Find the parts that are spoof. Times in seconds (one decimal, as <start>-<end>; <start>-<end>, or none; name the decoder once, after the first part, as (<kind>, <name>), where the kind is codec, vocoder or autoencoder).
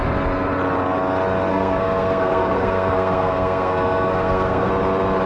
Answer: 1.5-4.7 (codec, SNAC)